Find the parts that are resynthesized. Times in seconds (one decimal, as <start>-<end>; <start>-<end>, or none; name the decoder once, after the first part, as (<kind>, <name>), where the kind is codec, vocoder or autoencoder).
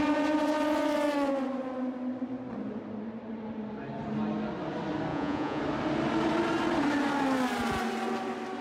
5.1-5.6 (vocoder, Vocos)